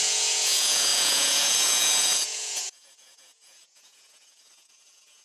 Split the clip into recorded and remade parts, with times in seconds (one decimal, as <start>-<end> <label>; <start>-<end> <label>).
0.0-5.2 remade